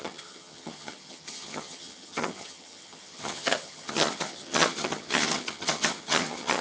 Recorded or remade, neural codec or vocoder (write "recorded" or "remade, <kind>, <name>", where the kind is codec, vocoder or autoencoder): remade, vocoder, HiFi-GAN